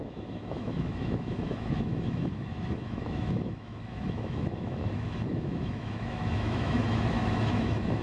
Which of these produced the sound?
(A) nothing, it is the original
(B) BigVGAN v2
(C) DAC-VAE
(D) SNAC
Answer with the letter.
C